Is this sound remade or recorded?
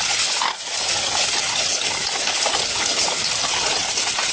recorded